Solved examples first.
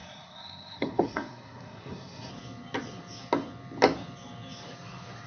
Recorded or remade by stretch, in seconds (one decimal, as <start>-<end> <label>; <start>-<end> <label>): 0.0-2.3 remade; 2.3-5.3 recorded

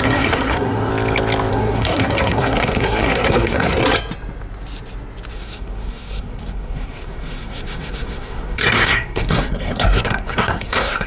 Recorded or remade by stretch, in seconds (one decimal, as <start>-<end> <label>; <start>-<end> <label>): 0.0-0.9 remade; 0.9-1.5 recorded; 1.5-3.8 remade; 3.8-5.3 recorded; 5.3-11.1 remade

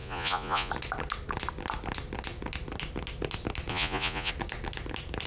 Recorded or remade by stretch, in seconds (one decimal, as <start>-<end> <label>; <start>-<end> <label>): 0.0-0.7 remade; 0.7-3.7 recorded; 3.7-4.3 remade; 4.3-5.3 recorded

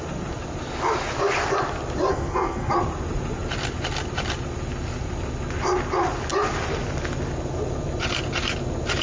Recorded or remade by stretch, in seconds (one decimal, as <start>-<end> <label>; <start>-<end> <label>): 0.0-2.1 recorded; 2.1-2.7 remade; 2.7-9.0 recorded

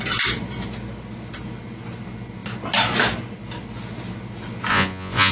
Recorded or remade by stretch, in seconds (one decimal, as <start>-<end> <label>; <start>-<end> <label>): 0.0-4.7 recorded; 4.7-5.3 remade

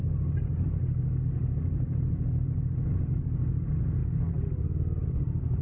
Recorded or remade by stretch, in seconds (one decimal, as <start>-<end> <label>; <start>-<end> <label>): 0.0-5.6 recorded

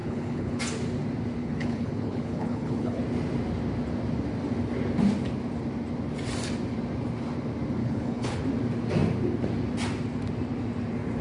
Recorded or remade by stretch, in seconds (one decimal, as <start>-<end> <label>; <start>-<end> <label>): 0.0-0.6 remade; 0.6-1.4 recorded; 1.4-3.0 remade; 3.0-7.8 recorded; 7.8-8.4 remade; 8.4-11.2 recorded

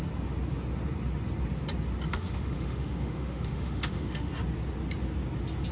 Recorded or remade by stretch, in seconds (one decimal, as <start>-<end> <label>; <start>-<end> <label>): 0.0-2.1 recorded; 2.1-4.3 remade; 4.3-5.7 recorded